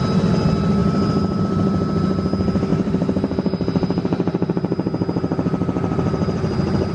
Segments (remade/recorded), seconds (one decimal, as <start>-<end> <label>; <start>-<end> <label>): 0.0-0.8 recorded; 0.8-1.4 remade; 1.4-2.7 recorded; 2.7-6.9 remade